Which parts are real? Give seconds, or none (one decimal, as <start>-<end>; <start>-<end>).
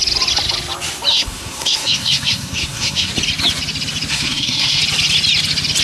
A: 0.0-1.1; 3.1-4.1; 4.8-5.8